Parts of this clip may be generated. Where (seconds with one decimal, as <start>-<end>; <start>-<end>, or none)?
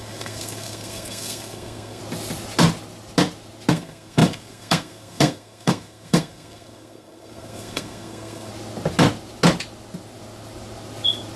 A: 0.0-2.0; 3.7-8.5